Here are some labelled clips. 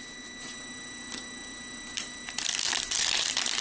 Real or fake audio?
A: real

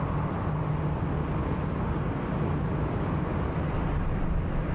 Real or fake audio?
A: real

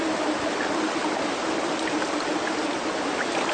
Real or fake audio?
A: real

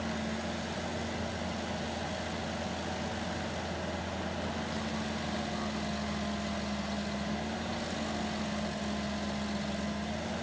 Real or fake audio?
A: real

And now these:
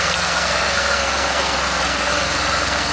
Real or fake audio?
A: fake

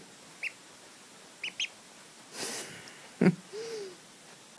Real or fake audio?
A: real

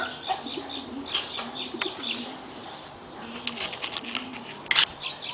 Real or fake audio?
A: real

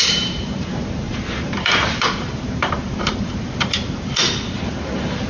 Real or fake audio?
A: fake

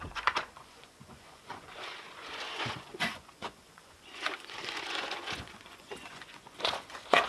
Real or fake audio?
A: fake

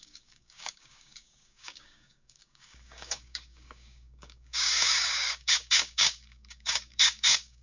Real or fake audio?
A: fake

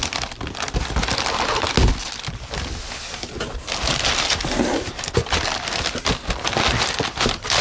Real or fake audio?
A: real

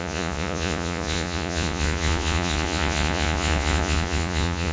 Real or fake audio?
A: fake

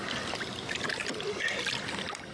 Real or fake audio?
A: real